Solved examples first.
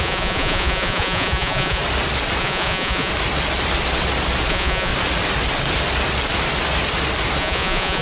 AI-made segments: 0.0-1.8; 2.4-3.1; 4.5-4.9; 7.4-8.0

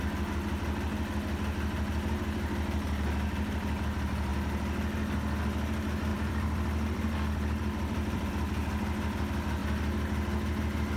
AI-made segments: 6.1-8.3

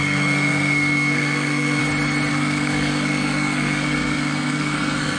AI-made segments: 0.0-1.8; 2.3-5.2

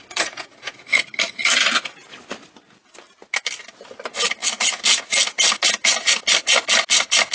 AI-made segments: 0.0-1.0

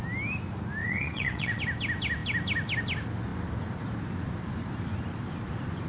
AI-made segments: 0.8-1.6

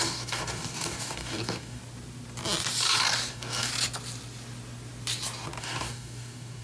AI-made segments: 0.0-1.8; 3.3-3.7; 5.6-6.6

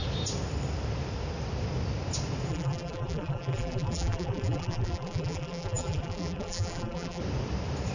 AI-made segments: 2.5-7.2